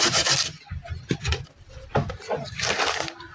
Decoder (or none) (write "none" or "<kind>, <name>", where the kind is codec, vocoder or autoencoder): none